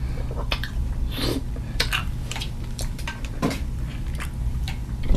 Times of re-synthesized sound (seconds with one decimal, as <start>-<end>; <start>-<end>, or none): 0.0-3.9; 4.5-5.2